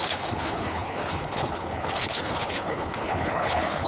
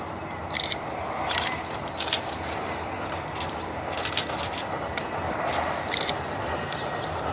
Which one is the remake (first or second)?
first